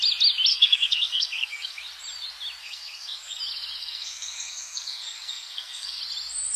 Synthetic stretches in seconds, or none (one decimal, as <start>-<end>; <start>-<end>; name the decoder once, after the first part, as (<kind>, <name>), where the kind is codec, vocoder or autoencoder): 0.5-1.8 (codec, SNAC); 2.6-3.4; 3.8-6.0